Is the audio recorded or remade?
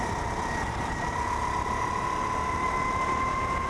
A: recorded